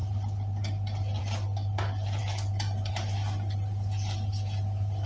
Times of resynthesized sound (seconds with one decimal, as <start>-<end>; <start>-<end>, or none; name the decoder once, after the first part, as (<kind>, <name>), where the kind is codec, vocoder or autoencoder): none